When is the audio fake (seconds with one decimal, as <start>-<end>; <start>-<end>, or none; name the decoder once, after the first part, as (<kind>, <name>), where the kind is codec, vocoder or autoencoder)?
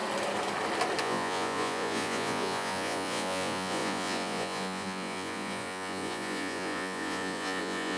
1.0-8.0 (vocoder, Vocos)